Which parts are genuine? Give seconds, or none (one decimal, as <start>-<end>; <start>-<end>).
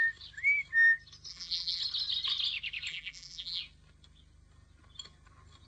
0.0-1.3; 1.8-2.9; 3.6-5.7